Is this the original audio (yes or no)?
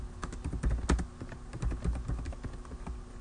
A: yes